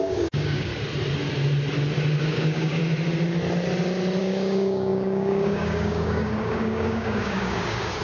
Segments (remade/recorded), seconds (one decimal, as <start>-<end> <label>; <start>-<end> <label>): 0.0-0.7 remade; 0.7-2.2 recorded; 2.2-2.8 remade; 2.8-4.2 recorded; 4.2-8.0 remade